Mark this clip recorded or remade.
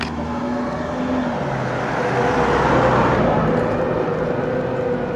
recorded